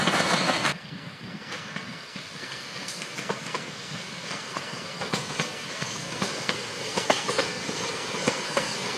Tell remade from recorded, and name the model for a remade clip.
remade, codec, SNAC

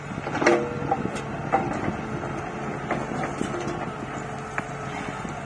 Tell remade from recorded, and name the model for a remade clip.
recorded